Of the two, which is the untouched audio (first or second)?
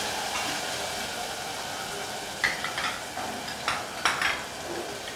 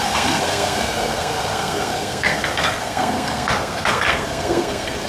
first